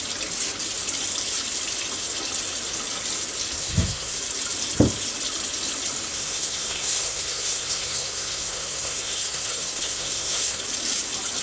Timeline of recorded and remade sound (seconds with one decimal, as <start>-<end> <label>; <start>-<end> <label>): 0.0-3.6 recorded; 3.6-4.2 remade; 4.2-6.1 recorded; 6.1-10.6 remade; 10.6-11.4 recorded